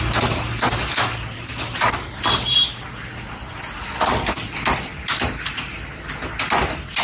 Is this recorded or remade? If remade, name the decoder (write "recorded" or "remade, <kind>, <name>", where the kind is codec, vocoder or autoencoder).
recorded